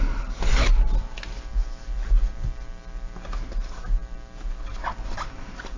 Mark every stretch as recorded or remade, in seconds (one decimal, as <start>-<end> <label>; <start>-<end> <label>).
0.0-5.8 recorded